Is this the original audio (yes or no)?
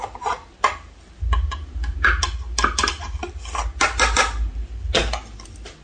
yes